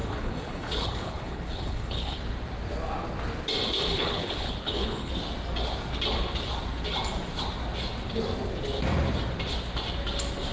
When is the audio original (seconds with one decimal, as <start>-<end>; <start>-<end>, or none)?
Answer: 2.2-3.9; 5.1-10.5